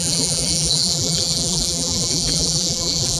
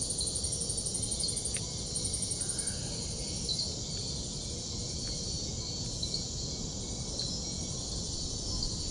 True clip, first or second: second